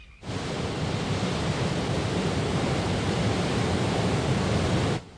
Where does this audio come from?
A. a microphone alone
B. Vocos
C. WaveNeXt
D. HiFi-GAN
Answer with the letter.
A